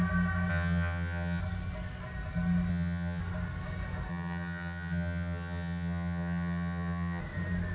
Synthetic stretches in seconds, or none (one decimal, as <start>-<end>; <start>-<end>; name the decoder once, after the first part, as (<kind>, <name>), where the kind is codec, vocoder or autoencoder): 0.5-1.4 (vocoder, HiFi-GAN); 2.7-3.2; 4.1-7.2